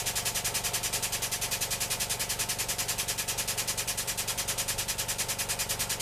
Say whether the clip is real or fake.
real